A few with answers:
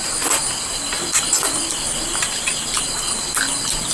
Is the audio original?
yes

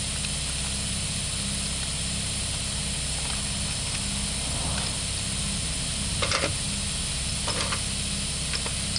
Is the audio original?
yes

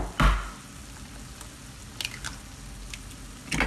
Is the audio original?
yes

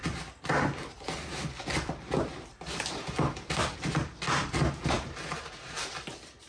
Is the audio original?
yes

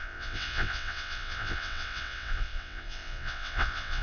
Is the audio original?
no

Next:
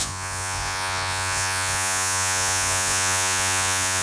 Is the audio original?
no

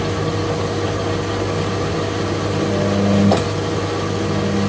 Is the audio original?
yes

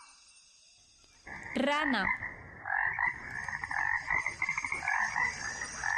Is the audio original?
yes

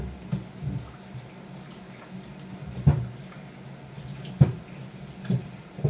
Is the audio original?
yes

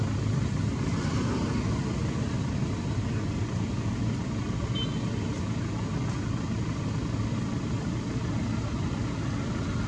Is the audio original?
yes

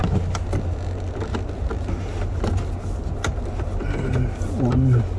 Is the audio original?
yes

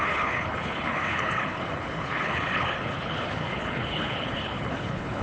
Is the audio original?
no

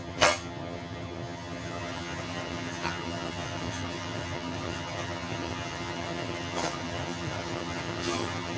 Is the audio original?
no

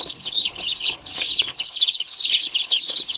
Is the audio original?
no